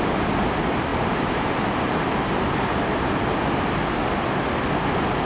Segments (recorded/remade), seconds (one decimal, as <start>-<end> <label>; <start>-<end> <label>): 0.0-5.3 recorded